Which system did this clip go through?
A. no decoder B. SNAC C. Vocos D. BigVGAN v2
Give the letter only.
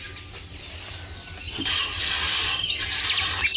A